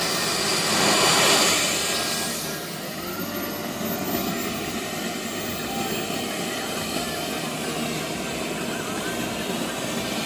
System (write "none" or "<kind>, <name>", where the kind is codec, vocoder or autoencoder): none